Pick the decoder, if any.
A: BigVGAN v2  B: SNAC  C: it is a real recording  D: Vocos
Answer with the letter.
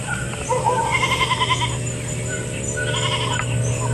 C